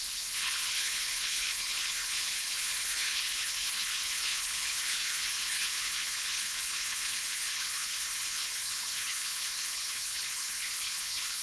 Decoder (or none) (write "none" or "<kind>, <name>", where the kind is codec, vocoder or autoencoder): codec, HILCodec